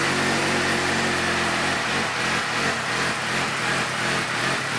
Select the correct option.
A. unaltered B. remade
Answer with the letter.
A